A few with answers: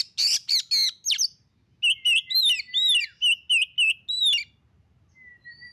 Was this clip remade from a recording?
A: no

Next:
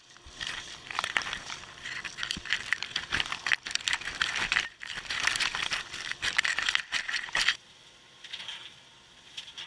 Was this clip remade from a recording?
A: yes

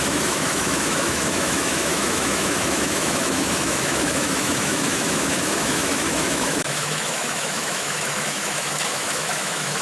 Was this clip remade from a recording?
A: yes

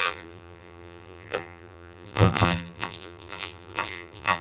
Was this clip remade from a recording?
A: yes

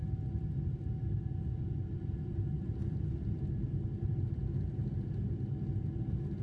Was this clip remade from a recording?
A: no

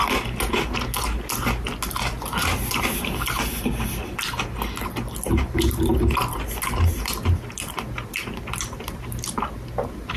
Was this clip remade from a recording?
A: no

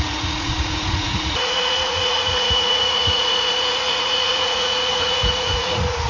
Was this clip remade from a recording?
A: yes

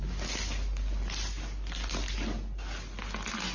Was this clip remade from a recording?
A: no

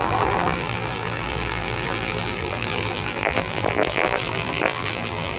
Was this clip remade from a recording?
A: yes